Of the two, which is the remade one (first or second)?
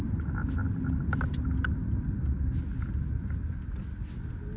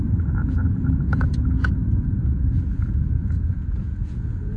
second